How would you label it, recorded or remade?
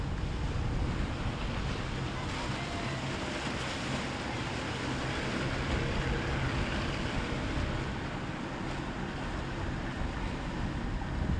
recorded